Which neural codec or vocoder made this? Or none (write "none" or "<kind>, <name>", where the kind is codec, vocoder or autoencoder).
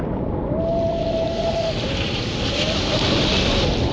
none